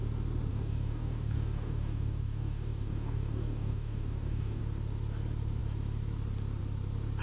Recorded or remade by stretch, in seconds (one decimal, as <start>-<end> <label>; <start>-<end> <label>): 0.0-0.5 recorded; 0.5-4.6 remade; 4.6-7.2 recorded